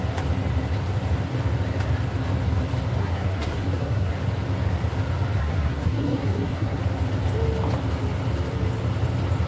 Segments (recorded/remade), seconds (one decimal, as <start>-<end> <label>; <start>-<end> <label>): 0.0-3.0 recorded; 3.0-4.1 remade; 4.1-5.4 recorded; 5.4-6.8 remade; 6.8-9.5 recorded